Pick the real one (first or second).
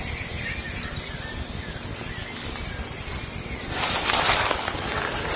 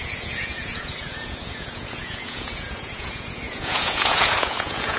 first